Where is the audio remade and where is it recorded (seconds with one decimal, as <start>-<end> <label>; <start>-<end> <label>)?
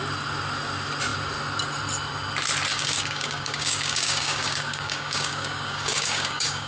0.0-2.7 recorded; 2.7-6.7 remade